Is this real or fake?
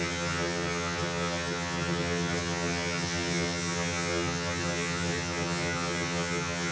fake